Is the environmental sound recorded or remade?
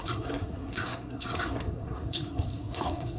remade